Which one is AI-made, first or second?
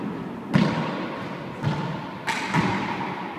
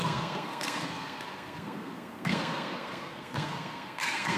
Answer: second